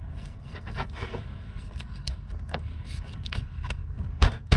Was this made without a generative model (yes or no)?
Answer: no